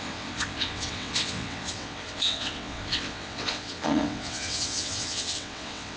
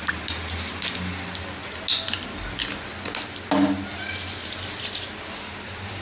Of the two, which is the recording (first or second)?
second